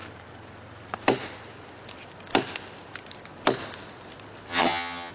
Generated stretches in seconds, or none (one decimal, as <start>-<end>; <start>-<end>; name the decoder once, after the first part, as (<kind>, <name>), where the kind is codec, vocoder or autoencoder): 4.5-5.1 (vocoder, HiFi-GAN)